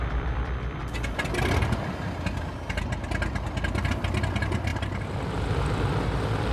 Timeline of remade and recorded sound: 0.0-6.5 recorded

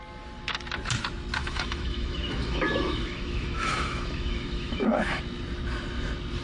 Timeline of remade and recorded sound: 0.0-1.4 recorded; 1.4-5.2 remade; 5.2-6.4 recorded

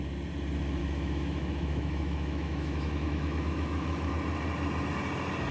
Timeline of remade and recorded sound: 0.0-0.8 recorded; 0.8-4.1 remade; 4.1-5.5 recorded

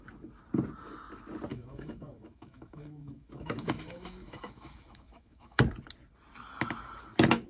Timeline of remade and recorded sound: 0.0-1.5 recorded; 1.5-5.6 remade; 5.6-7.5 recorded

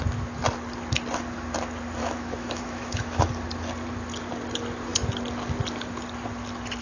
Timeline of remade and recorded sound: 0.0-2.0 recorded; 2.0-3.3 remade; 3.3-6.8 recorded

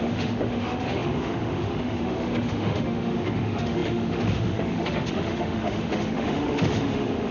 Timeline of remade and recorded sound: 0.0-7.3 remade

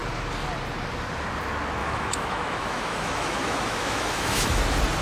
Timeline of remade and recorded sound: 0.0-1.8 recorded; 1.8-4.6 remade; 4.6-5.0 recorded

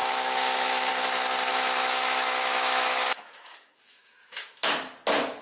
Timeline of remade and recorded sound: 0.0-0.9 remade; 0.9-1.5 recorded; 1.5-4.7 remade; 4.7-5.4 recorded